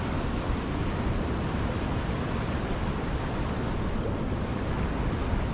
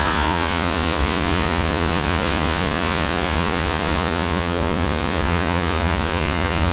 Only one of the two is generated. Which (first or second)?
second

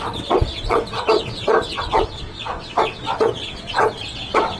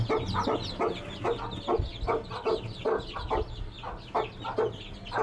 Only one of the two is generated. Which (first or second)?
first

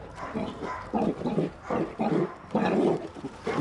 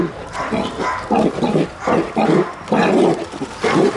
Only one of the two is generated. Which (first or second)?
first